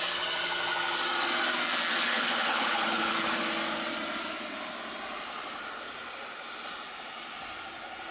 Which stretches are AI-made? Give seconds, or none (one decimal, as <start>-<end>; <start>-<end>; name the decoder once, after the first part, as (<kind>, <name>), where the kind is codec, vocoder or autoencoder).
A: 1.9-3.4 (codec, HILCodec)